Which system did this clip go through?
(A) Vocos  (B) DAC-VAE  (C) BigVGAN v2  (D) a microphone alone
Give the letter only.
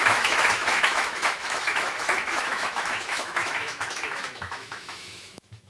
B